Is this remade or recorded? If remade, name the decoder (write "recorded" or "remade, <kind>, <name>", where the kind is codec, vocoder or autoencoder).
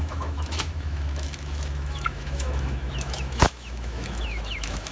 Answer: remade, autoencoder, DAC-VAE